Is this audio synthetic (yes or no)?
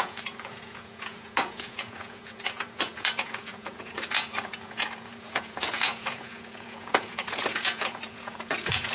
yes